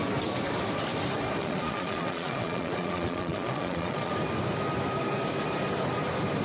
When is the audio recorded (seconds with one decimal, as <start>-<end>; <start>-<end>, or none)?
0.0-1.4; 4.1-6.4